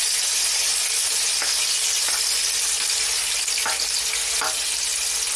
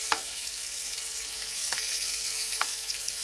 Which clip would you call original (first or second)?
first